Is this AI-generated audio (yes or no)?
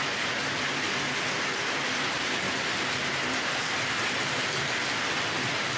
no